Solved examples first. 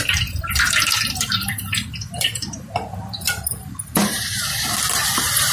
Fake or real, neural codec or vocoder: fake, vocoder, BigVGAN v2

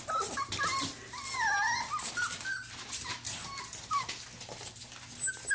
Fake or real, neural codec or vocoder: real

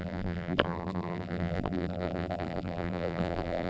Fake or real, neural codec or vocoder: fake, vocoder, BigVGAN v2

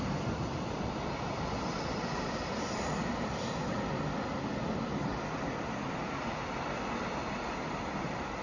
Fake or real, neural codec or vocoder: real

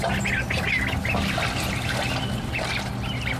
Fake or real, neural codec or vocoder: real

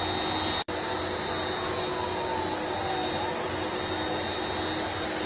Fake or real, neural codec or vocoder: real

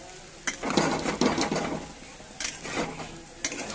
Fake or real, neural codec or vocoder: real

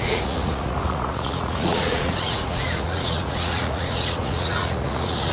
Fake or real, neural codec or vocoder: fake, vocoder, Vocos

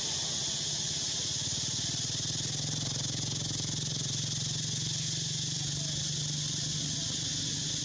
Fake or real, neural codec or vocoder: real